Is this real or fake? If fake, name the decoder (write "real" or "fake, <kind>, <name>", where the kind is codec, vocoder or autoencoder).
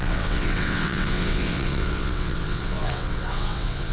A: fake, vocoder, WaveNeXt